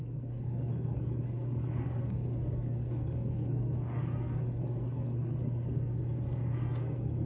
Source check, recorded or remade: remade